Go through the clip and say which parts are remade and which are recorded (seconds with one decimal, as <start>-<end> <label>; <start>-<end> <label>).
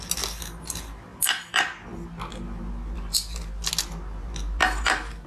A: 0.0-5.3 recorded